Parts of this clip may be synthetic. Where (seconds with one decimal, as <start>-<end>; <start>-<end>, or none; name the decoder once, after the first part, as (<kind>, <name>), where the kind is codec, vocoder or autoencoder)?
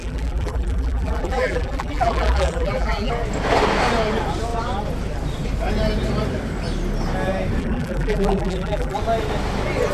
0.0-3.1 (vocoder, BigVGAN v2); 7.6-9.0